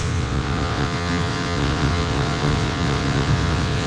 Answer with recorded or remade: remade